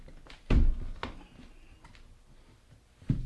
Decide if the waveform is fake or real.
real